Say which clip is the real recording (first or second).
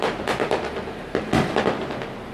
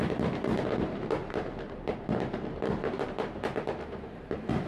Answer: first